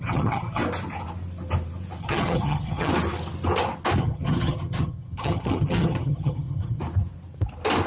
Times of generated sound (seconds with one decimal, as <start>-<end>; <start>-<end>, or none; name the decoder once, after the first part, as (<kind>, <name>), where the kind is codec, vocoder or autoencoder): 0.0-0.6 (vocoder, HiFi-GAN); 2.0-2.9; 4.0-6.8